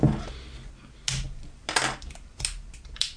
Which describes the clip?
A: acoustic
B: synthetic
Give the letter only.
A